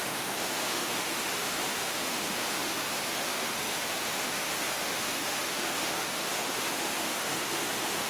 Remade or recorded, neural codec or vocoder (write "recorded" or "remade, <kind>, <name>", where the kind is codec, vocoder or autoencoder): remade, autoencoder, DAC-VAE